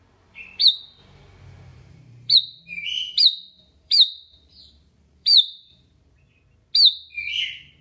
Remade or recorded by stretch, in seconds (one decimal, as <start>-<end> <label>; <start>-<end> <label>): 0.0-0.6 recorded; 0.6-1.2 remade; 1.2-1.7 recorded; 1.7-6.1 remade; 6.1-7.8 recorded